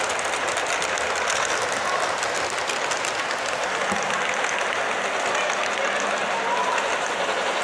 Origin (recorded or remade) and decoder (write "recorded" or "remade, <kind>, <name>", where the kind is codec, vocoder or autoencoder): recorded